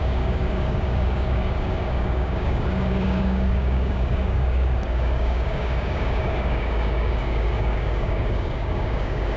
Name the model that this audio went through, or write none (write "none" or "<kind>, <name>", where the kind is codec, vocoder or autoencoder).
codec, DAC